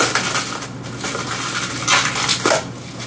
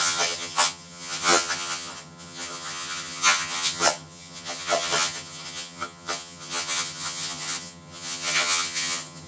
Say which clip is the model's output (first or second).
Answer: second